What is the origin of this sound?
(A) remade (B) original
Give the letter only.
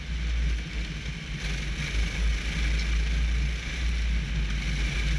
B